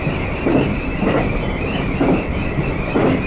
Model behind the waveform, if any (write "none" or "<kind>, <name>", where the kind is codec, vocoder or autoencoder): none